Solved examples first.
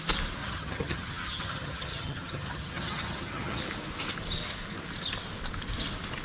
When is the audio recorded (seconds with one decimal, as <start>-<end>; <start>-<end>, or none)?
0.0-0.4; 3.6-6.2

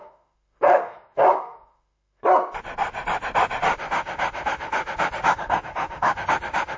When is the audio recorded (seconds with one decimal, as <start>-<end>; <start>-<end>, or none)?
2.2-3.7

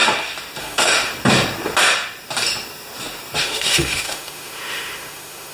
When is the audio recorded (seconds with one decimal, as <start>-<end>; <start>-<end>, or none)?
0.0-0.6; 1.1-3.4

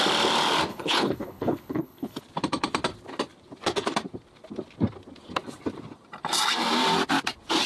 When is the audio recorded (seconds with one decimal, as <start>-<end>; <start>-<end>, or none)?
0.0-0.7; 2.2-7.7

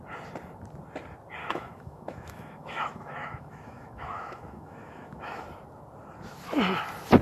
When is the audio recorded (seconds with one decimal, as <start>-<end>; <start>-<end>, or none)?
0.0-1.4; 5.4-7.2

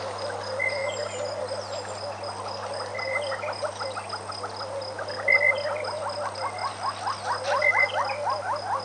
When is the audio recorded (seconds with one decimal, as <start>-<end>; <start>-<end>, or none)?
0.0-8.8

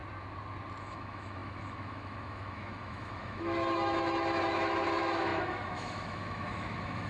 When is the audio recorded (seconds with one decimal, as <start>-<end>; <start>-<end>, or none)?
0.0-0.8